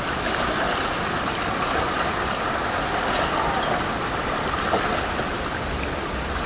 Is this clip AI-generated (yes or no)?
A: no